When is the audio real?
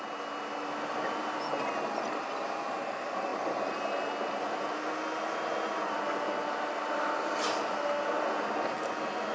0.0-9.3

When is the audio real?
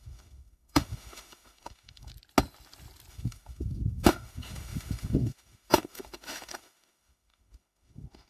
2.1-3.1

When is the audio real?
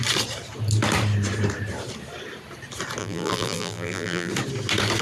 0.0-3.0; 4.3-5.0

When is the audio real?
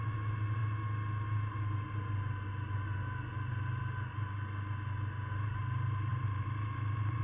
0.0-6.1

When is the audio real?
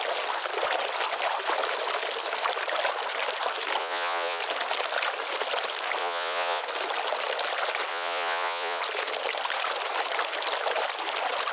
0.0-3.8; 4.4-6.0; 6.6-7.9; 8.8-11.5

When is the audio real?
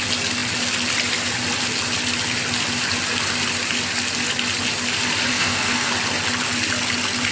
0.0-5.3; 5.9-7.3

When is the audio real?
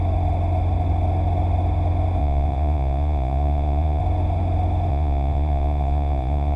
0.0-2.2; 4.0-4.9